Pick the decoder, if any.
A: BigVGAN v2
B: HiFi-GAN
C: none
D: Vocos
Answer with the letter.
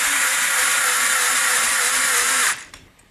A